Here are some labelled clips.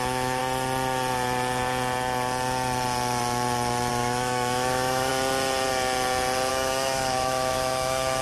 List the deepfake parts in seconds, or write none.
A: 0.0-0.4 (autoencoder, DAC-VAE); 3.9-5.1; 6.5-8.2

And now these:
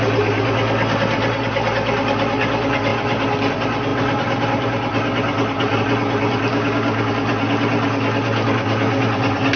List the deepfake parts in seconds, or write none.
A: 6.5-7.1 (codec, DAC)

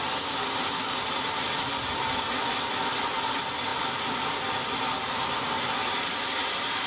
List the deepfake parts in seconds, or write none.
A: none

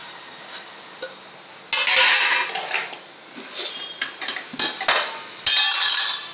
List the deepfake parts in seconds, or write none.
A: none